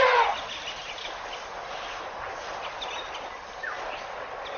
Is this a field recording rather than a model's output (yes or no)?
yes